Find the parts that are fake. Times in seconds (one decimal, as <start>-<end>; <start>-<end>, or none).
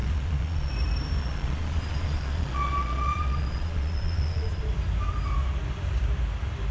0.0-0.7; 1.2-4.6